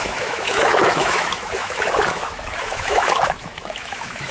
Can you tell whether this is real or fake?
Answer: fake